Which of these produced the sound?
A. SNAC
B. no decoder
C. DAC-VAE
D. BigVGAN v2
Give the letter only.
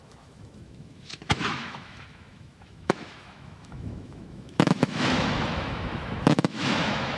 C